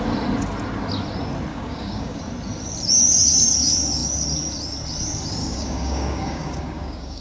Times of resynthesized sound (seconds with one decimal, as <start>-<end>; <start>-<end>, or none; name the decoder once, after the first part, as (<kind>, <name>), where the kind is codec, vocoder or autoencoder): 1.5-2.2 (codec, DAC); 5.4-7.2